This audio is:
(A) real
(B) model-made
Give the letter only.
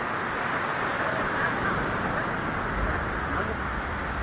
A